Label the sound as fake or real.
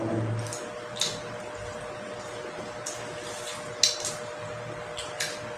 real